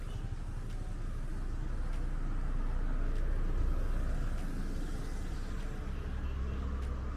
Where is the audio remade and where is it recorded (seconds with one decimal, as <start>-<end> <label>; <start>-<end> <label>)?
0.0-7.2 recorded